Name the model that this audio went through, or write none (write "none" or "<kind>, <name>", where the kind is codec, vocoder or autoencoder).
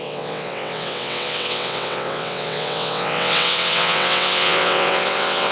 vocoder, WaveNeXt